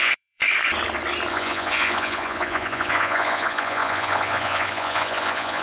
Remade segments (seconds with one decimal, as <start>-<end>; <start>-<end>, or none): 0.0-0.4; 1.3-5.6